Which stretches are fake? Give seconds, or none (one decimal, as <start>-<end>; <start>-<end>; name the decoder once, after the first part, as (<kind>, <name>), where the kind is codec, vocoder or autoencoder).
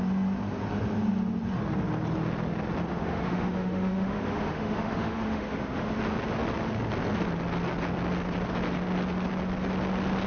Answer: 2.9-6.0 (autoencoder, DAC-VAE)